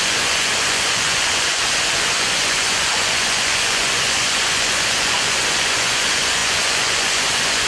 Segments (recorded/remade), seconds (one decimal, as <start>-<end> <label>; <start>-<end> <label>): 0.0-7.7 remade